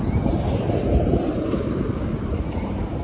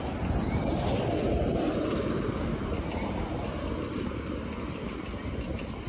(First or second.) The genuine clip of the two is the second